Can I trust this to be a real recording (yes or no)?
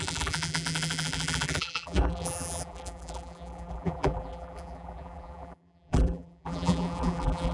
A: no